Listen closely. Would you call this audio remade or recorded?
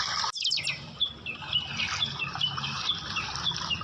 recorded